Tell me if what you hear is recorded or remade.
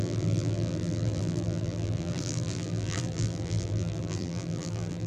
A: remade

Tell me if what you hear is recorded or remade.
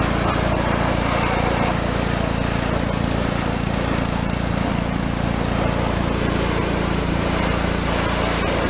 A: remade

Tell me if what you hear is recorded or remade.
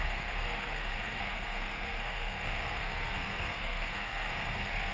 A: remade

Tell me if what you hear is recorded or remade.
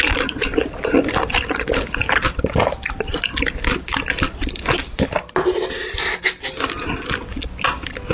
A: recorded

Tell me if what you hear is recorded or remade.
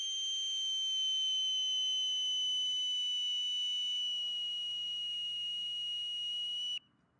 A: recorded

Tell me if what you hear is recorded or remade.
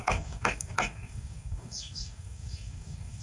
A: remade